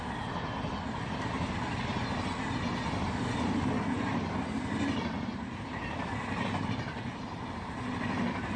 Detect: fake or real real